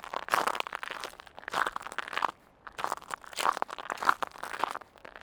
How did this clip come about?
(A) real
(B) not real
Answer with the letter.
A